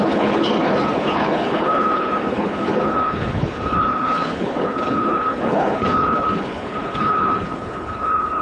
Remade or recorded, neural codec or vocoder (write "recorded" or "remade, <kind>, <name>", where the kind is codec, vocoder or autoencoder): remade, codec, HILCodec